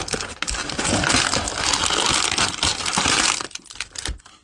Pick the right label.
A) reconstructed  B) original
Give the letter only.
B